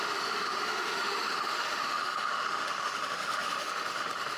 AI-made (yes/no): yes